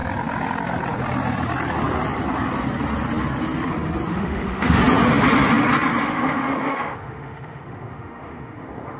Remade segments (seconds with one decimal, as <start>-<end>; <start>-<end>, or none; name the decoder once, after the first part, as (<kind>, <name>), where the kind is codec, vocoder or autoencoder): 4.1-4.8 (autoencoder, DAC-VAE); 6.0-9.0